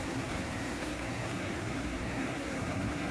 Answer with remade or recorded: remade